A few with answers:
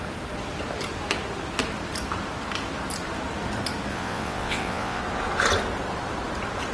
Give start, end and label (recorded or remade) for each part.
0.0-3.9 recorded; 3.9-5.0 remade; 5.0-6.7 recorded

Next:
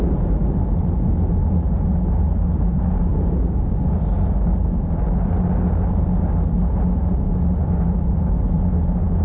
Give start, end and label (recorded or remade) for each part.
0.0-9.2 recorded

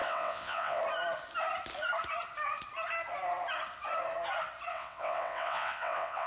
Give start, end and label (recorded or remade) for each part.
0.0-0.8 remade; 0.8-4.7 recorded; 4.7-6.3 remade

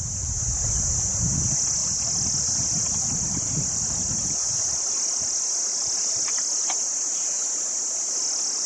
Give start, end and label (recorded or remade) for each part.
0.0-8.7 recorded

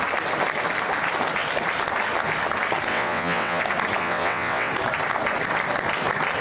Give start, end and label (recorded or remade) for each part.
0.0-2.9 recorded; 2.9-3.6 remade; 3.6-4.0 recorded; 4.0-4.7 remade; 4.7-6.4 recorded

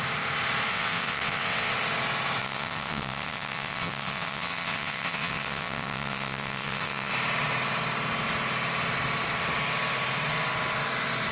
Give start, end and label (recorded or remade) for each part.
0.0-0.7 recorded; 0.7-1.7 remade; 1.7-2.4 recorded; 2.4-7.1 remade; 7.1-11.3 recorded

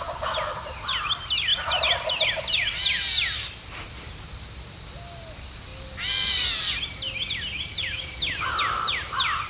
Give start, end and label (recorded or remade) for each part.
0.0-9.5 recorded